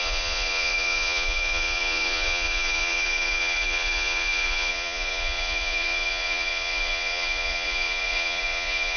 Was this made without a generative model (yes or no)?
no